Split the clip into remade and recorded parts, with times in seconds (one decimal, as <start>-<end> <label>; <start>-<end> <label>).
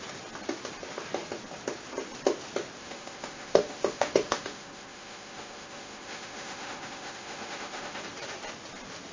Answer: 0.0-2.8 recorded; 2.8-8.0 remade; 8.0-9.1 recorded